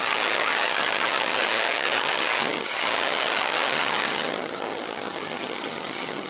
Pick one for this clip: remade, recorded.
remade